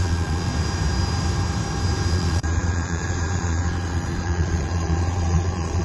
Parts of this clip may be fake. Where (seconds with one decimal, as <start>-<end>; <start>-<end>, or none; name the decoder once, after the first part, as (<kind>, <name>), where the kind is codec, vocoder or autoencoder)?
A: 0.0-0.5 (vocoder, Vocos); 2.1-5.8